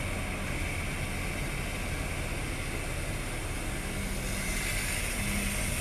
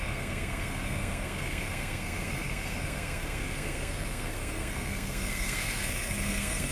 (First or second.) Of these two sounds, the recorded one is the first